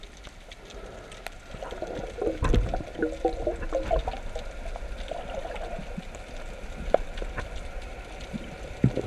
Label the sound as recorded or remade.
recorded